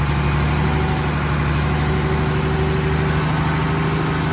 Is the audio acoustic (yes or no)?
yes